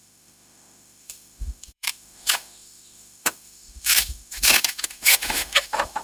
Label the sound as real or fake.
fake